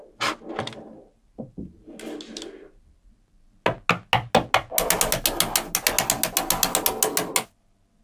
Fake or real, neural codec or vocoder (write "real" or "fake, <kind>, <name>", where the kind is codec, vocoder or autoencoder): real